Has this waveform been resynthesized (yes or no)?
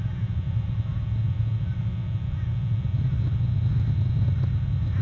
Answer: no